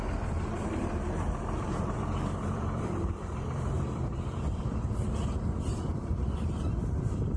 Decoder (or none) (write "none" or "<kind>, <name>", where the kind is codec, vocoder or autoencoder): vocoder, BigVGAN v2